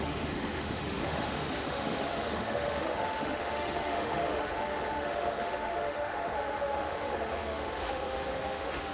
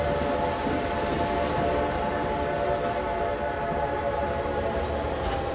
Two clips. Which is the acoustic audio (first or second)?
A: second